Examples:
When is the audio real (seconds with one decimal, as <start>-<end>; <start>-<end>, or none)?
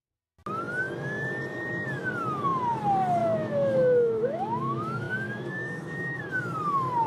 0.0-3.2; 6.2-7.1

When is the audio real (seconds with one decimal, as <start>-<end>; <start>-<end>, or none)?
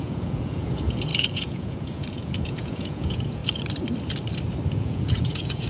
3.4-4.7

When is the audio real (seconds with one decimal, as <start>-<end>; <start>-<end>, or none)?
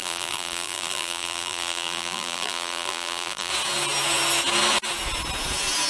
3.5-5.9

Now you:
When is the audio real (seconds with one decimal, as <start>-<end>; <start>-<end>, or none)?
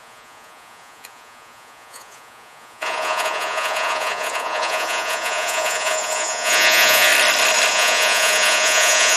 7.1-7.7